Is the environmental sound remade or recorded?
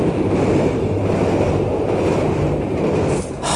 recorded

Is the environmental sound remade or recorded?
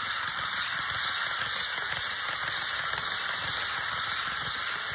recorded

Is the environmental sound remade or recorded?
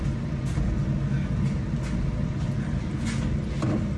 recorded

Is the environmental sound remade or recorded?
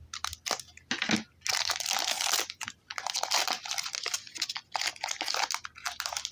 recorded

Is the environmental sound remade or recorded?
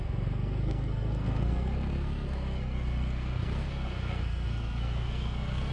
remade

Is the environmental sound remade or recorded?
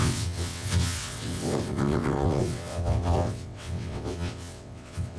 remade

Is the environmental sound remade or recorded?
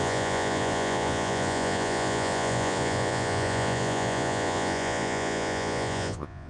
remade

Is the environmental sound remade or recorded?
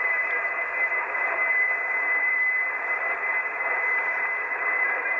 remade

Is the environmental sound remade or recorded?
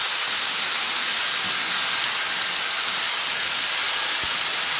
recorded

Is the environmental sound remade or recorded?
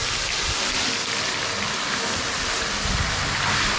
recorded